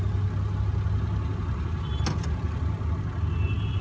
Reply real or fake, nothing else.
real